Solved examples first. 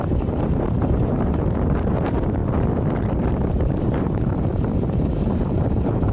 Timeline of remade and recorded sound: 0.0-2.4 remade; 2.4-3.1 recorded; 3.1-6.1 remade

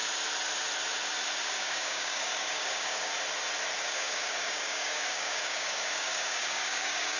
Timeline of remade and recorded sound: 0.0-1.4 recorded; 1.4-3.1 remade; 3.1-3.8 recorded; 3.8-7.2 remade

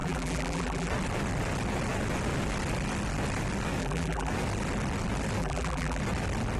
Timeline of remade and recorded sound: 0.0-0.9 remade; 0.9-3.8 recorded; 3.8-4.3 remade; 4.3-5.4 recorded; 5.4-6.0 remade; 6.0-6.6 recorded

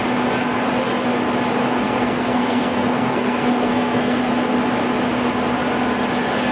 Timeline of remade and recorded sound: 0.0-1.6 recorded; 1.6-4.2 remade; 4.2-6.5 recorded